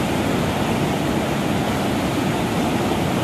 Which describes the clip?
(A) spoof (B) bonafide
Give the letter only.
B